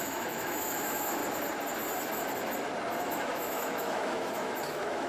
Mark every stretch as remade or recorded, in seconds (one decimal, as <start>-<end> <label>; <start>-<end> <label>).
0.0-1.2 remade; 1.2-3.0 recorded; 3.0-5.1 remade